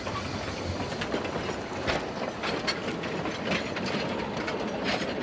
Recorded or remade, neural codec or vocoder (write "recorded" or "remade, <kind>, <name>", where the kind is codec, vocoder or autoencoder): recorded